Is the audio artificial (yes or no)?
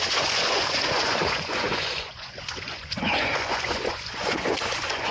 yes